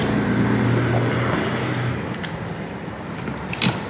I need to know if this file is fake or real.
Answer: real